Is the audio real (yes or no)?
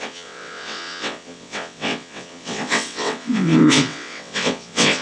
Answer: no